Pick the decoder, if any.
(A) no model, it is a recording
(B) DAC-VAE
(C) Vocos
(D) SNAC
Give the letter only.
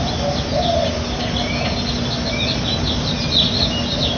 A